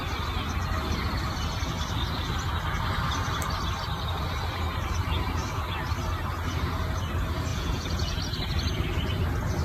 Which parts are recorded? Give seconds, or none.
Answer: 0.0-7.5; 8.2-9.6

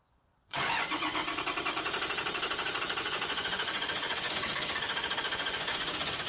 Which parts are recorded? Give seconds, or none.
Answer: 1.2-2.8; 4.5-5.2

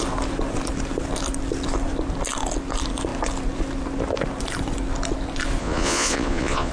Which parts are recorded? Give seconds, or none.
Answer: 0.0-5.6